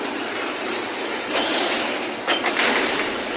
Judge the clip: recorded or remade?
recorded